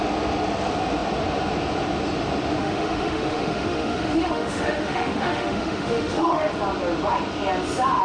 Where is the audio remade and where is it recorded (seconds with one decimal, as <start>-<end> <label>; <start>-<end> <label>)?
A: 0.0-2.6 recorded; 2.6-6.5 remade; 6.5-8.0 recorded